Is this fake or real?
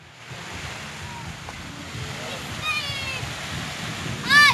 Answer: real